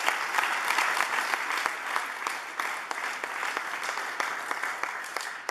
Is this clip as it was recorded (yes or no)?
yes